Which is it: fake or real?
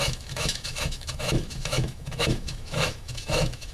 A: fake